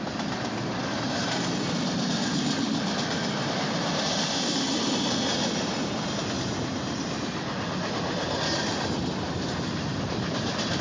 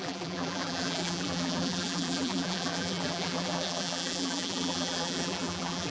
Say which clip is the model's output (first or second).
second